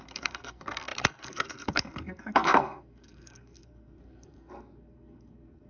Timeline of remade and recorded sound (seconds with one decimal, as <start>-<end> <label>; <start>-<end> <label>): 0.0-5.7 remade